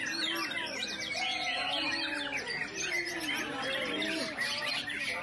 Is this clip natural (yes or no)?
yes